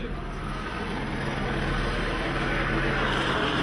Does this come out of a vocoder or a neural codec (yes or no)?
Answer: no